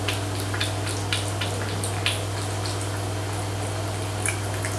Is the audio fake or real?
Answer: real